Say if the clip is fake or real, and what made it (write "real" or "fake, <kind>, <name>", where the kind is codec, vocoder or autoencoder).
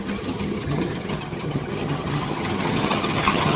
fake, vocoder, HiFi-GAN